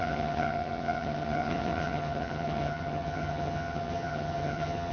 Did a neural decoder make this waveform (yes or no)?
yes